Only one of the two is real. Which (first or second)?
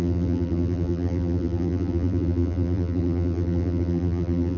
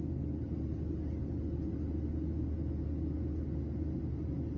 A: second